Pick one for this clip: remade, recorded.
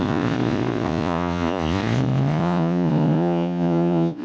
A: remade